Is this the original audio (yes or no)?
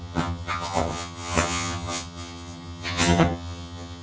no